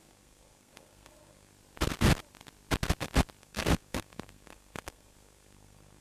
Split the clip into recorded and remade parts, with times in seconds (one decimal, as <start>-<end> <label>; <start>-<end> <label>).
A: 0.0-1.5 remade; 1.5-3.4 recorded; 3.4-6.0 remade